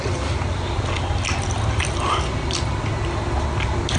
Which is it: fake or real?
real